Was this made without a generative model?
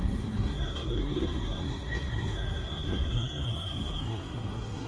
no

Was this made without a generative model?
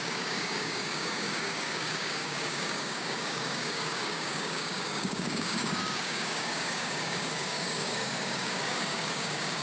no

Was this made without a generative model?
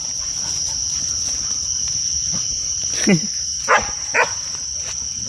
yes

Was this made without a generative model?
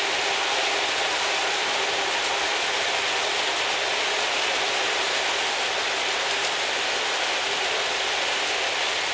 yes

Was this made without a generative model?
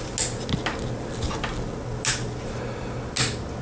yes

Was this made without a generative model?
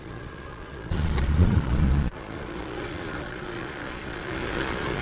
no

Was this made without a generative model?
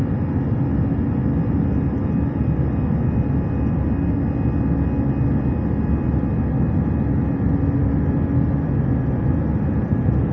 yes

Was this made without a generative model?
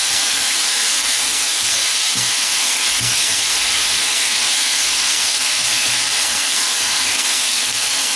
no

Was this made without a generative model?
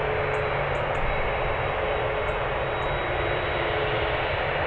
yes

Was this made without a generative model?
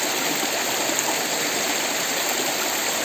yes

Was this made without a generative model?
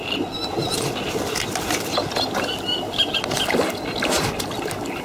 yes